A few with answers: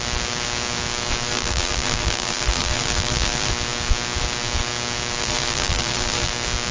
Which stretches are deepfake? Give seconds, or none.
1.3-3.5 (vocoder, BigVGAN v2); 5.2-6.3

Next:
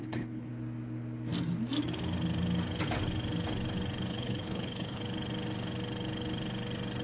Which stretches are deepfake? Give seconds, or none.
0.0-0.5 (codec, HILCodec); 4.1-5.0

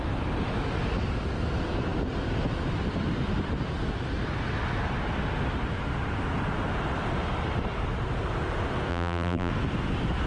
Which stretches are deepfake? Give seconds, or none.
8.9-9.5 (vocoder, BigVGAN v2)

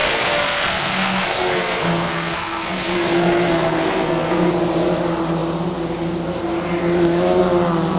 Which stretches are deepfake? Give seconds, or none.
0.0-4.5 (codec, SNAC)

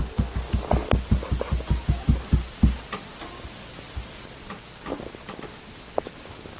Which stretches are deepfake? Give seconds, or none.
none

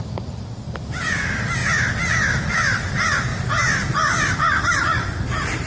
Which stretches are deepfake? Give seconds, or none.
none

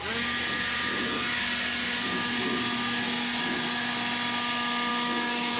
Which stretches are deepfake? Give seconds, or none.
4.9-5.6 (autoencoder, DAC-VAE)